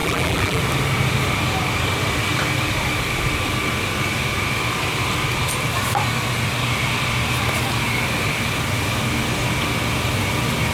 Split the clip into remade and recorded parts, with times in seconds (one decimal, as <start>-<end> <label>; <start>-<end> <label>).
0.0-0.6 remade; 0.6-10.7 recorded